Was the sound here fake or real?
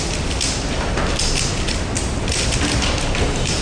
real